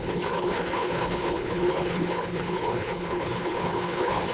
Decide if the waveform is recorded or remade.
remade